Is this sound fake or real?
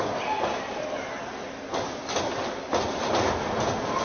real